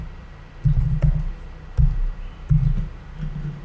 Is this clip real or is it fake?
real